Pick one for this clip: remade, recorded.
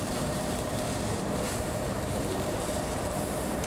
remade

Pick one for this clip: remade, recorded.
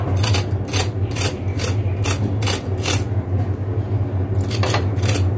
recorded